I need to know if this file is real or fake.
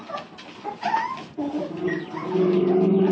real